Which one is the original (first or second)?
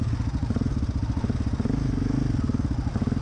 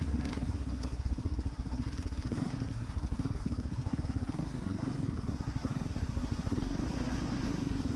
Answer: first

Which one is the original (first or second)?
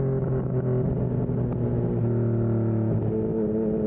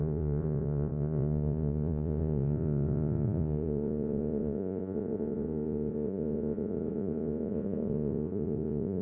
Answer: first